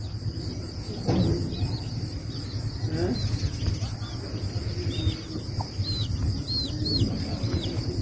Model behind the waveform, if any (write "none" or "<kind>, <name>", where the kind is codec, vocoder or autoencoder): none